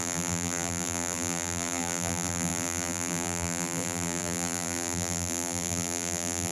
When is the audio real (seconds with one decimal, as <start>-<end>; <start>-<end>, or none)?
none